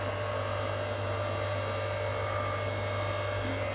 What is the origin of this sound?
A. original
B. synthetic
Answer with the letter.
A